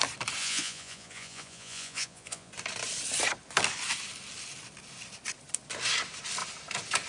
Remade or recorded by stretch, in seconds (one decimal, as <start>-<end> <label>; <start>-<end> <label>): 0.0-0.4 recorded; 0.4-2.5 remade; 2.5-7.1 recorded